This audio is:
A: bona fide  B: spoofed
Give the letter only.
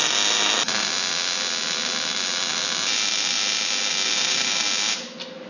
A